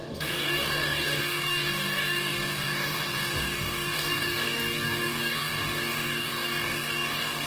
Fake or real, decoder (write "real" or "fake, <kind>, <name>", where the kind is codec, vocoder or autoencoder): fake, codec, DAC